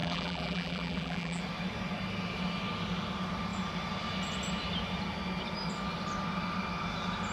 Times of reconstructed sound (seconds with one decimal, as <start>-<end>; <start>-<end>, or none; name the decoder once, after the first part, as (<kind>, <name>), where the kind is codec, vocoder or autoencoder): 0.0-1.4 (vocoder, BigVGAN v2)